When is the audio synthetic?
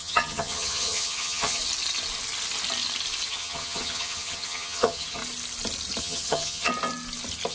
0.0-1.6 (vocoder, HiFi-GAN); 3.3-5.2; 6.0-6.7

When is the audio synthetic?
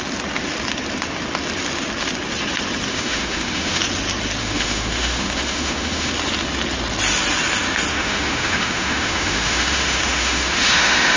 2.9-3.8 (autoencoder, DAC-VAE); 4.4-6.1; 7.9-11.2